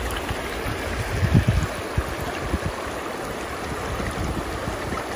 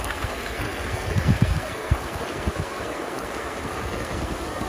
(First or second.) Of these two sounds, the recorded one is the first